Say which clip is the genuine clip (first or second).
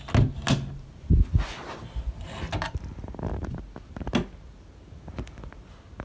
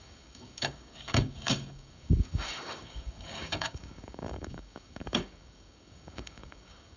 first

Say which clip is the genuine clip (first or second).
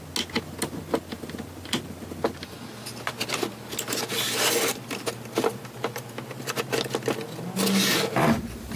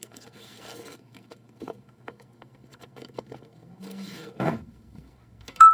first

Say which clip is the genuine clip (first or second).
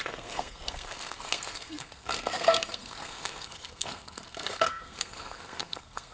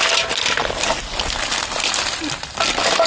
second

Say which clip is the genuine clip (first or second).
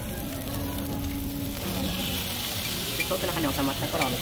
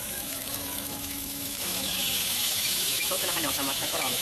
first